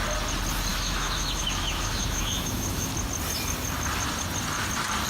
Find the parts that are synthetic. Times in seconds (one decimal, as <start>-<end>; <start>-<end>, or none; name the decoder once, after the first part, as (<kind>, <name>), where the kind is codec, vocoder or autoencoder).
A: 0.7-2.9 (autoencoder, DAC-VAE)